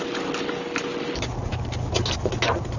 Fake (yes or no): no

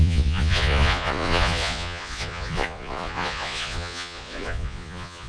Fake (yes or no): yes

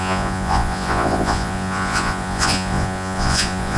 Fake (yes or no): yes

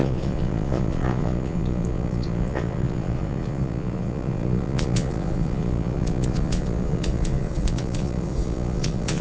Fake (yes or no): yes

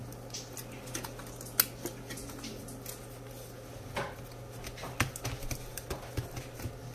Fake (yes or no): no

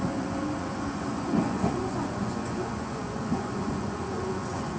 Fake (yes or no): yes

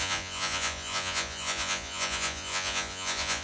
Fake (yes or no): yes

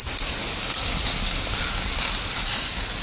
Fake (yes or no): no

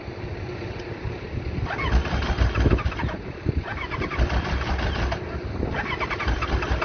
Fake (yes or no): no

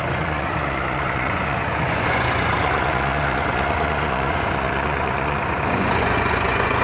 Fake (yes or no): yes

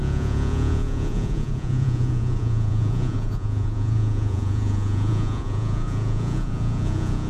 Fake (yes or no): yes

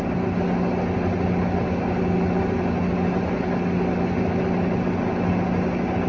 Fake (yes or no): no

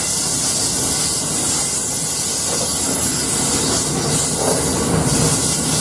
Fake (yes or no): no